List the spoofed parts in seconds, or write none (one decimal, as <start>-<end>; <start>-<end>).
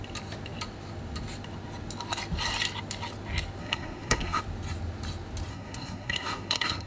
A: 3.6-4.4; 5.5-6.9